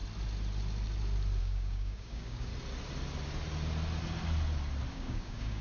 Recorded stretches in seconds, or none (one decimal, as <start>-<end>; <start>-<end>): 0.0-1.4; 2.5-4.9